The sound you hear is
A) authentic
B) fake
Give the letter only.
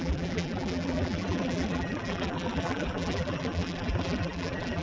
B